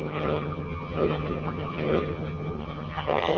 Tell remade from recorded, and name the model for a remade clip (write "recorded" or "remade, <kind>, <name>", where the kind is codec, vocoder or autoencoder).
remade, vocoder, HiFi-GAN